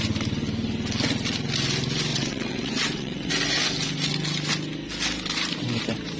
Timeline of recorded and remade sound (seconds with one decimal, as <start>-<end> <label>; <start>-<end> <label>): 0.0-2.1 recorded; 2.1-3.3 remade; 3.3-6.2 recorded